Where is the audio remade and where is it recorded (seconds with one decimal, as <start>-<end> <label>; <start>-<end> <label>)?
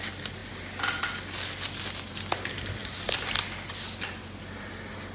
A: 0.0-5.1 recorded